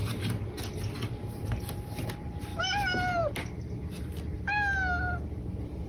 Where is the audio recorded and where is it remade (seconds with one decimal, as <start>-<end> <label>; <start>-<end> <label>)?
0.0-1.1 recorded; 1.1-2.5 remade; 2.5-5.5 recorded; 5.5-5.9 remade